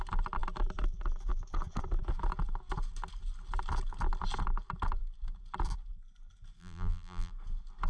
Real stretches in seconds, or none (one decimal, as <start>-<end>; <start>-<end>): 0.0-6.6; 7.3-7.9